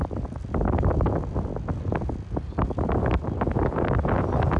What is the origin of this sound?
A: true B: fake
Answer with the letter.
A